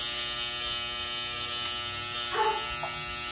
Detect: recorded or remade recorded